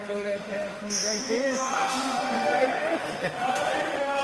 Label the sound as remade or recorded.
remade